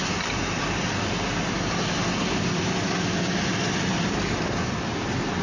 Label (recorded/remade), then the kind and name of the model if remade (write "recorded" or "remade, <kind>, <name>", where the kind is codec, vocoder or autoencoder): recorded